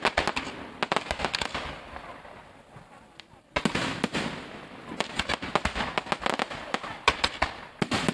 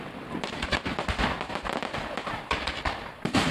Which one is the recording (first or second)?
first